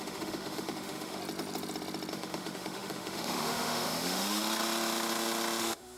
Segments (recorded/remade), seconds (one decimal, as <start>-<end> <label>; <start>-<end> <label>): 0.0-1.2 remade; 1.2-2.1 recorded; 2.1-4.4 remade; 4.4-5.6 recorded; 5.6-6.0 remade